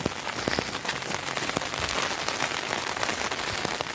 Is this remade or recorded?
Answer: recorded